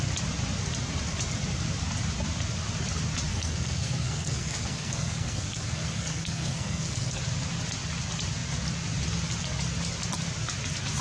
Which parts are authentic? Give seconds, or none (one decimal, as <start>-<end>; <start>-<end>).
0.0-3.3; 7.2-11.0